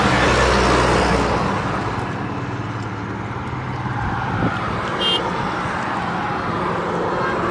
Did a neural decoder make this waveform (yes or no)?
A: no